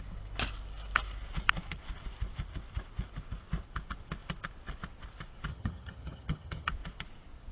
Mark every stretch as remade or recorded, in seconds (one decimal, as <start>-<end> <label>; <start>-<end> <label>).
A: 0.0-5.5 recorded; 5.5-6.7 remade; 6.7-7.5 recorded